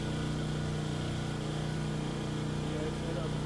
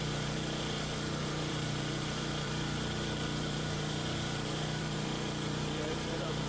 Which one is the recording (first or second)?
first